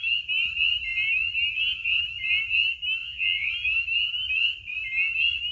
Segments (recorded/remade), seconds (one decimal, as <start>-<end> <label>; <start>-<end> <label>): 0.0-3.0 recorded; 3.0-3.5 remade; 3.5-5.5 recorded